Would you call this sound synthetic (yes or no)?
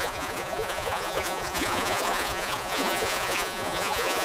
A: yes